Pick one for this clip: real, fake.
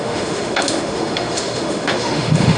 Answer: fake